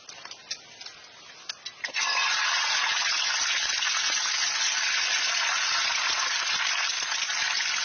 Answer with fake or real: real